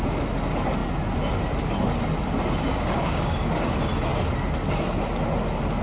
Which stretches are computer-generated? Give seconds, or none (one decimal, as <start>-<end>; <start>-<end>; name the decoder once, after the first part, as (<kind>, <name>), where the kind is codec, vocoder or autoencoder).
2.7-3.5 (codec, DAC)